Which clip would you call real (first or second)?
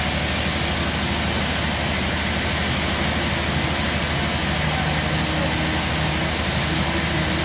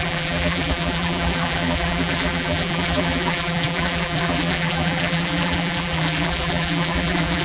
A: first